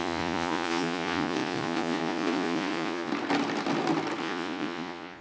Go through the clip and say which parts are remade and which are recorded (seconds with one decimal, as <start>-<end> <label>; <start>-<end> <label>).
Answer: 0.0-3.1 remade; 3.1-4.2 recorded; 4.2-5.2 remade